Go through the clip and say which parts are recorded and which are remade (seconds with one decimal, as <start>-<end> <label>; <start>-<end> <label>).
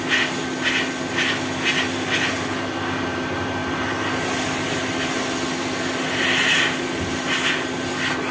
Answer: 0.0-8.3 recorded